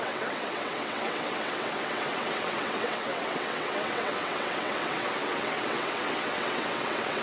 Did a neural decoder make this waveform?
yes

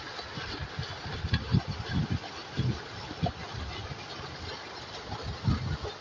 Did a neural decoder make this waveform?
no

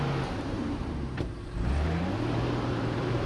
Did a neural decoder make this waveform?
yes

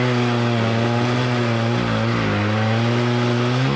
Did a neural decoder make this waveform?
no